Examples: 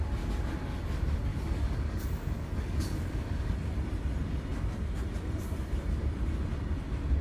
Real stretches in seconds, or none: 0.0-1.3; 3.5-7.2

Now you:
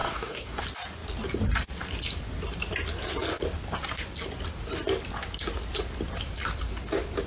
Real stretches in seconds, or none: 0.6-7.3

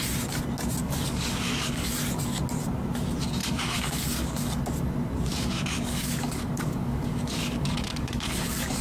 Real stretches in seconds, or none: 0.0-0.8; 1.9-3.4; 4.6-5.3

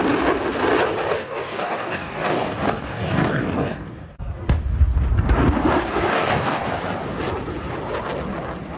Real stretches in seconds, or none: 0.0-1.2; 4.2-6.1; 6.7-8.8

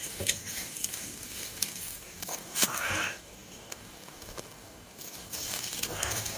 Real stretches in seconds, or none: none

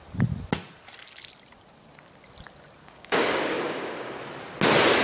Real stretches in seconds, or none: 0.0-2.8; 4.2-5.0

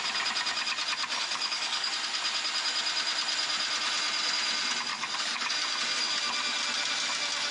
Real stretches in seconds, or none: 0.0-1.2; 1.9-4.9; 5.5-7.5